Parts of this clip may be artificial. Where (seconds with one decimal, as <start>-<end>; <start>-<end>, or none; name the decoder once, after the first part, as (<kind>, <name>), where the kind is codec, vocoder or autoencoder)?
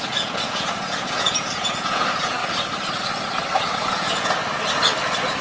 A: 0.0-2.4 (vocoder, Vocos); 3.7-4.4